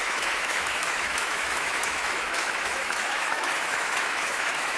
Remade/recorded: remade